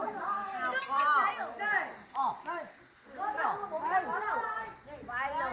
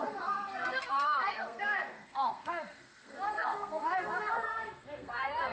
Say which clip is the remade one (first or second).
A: second